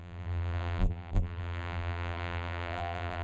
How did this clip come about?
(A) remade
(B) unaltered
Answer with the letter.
A